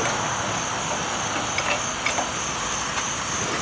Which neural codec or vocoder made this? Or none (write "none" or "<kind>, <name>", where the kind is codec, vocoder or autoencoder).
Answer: vocoder, BigVGAN v2